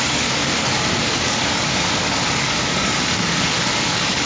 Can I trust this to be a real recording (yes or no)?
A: no